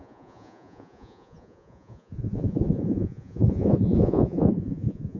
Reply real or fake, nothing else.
fake